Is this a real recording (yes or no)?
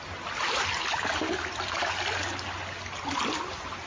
yes